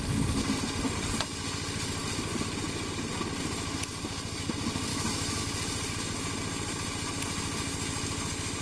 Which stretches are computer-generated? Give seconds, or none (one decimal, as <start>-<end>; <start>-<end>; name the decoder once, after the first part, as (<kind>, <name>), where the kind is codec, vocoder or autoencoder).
4.9-5.4 (autoencoder, DAC-VAE)